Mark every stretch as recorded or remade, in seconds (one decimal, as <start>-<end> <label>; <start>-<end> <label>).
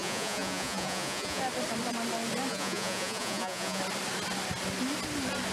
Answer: 0.0-1.4 remade; 1.4-2.5 recorded; 2.5-3.8 remade; 3.8-5.5 recorded